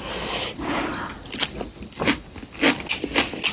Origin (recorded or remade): recorded